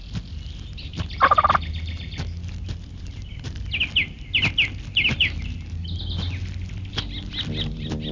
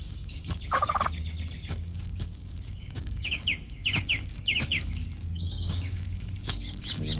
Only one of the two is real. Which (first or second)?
first